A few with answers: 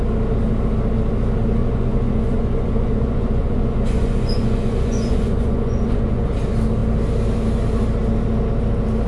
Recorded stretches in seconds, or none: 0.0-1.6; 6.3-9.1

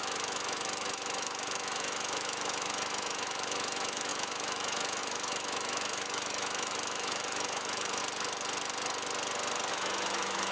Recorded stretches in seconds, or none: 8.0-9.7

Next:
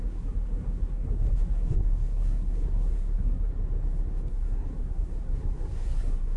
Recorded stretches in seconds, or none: 3.5-4.3

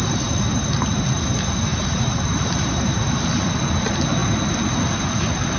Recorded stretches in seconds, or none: 0.0-1.7; 3.0-5.6

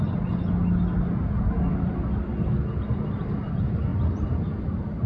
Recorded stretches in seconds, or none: 0.0-5.1

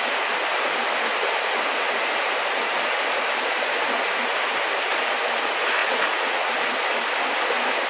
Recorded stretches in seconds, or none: 0.0-5.8; 6.5-7.9

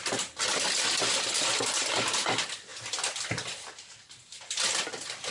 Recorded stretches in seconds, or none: 0.0-5.3

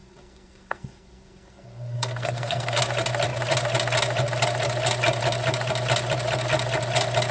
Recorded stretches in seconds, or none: 2.8-7.3